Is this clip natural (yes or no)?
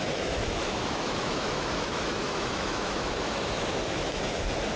no